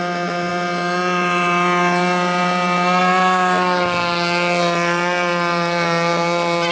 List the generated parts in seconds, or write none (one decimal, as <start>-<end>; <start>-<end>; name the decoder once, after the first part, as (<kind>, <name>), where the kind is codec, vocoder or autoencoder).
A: none